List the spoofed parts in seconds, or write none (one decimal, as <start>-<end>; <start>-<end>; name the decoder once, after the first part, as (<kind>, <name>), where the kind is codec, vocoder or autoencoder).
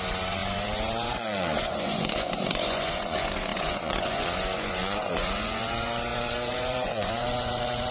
0.0-7.9 (vocoder, Vocos)